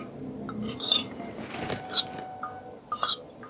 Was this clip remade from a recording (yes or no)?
no